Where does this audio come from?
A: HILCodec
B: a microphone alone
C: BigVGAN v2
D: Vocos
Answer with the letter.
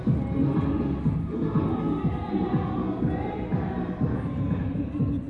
B